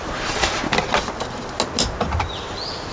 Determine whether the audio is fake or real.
real